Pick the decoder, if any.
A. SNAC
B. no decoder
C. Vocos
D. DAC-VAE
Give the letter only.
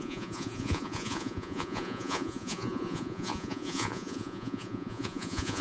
C